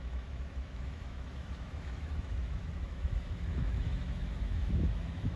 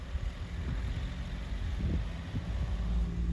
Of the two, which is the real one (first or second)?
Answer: second